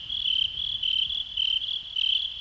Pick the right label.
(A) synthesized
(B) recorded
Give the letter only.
B